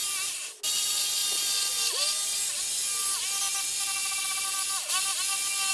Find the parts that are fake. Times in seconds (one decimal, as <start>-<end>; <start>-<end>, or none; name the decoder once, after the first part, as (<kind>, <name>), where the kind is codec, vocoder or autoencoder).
none